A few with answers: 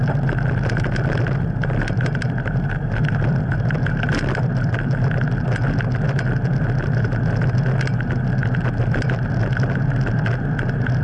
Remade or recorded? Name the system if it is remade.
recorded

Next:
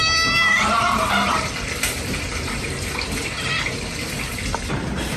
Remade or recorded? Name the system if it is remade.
recorded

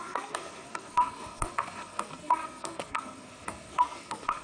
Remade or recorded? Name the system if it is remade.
remade, codec, SNAC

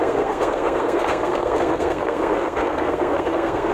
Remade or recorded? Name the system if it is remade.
remade, codec, SNAC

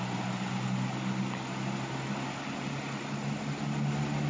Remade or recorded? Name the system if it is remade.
recorded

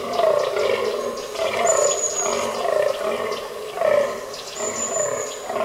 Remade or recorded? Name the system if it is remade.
recorded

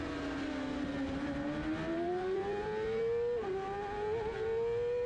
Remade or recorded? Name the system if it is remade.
recorded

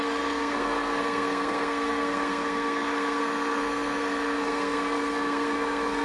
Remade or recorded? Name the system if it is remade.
remade, codec, SNAC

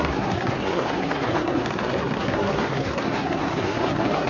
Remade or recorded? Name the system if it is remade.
remade, codec, SNAC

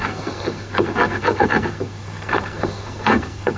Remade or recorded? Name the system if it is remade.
remade, codec, SNAC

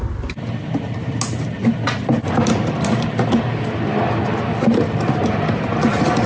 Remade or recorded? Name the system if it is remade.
recorded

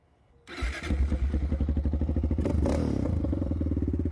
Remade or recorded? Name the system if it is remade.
recorded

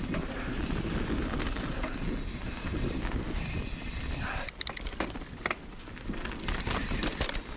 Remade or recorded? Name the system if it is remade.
recorded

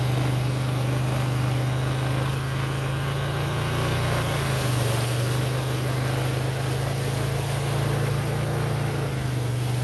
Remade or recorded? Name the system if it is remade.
recorded